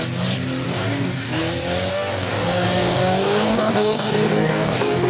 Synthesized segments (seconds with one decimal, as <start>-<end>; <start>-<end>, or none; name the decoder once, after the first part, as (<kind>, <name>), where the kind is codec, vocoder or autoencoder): 0.7-1.4 (codec, DAC); 1.9-5.1